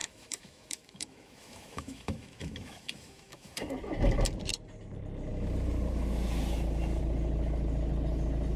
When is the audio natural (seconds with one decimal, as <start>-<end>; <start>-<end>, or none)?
3.7-8.6